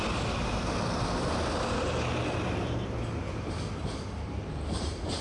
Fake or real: real